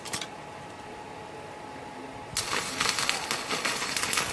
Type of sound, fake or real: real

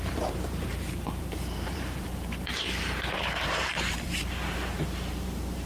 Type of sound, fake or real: fake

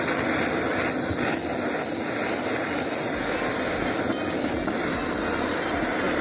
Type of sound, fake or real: real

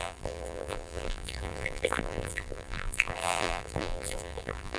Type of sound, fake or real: fake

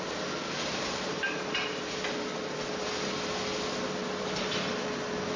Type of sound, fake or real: real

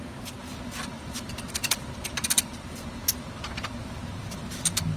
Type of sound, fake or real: fake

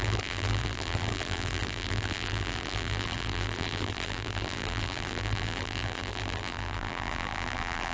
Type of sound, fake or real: fake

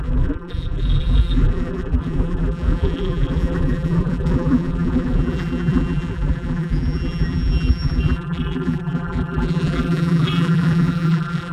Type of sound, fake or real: fake